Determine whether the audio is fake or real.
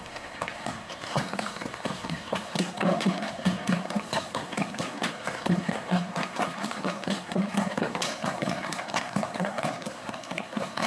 fake